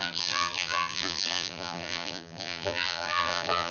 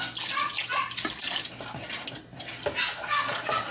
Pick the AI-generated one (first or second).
first